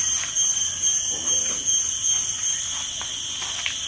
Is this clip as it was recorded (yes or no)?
yes